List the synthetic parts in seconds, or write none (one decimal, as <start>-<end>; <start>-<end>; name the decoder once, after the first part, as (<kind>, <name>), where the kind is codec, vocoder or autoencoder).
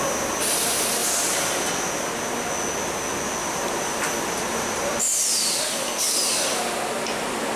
1.0-1.7 (vocoder, BigVGAN v2); 3.4-4.9